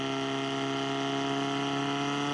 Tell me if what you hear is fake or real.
real